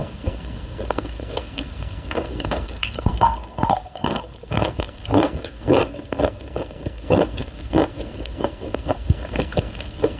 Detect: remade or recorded remade